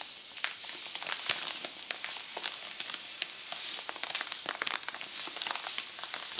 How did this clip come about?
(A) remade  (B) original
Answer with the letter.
B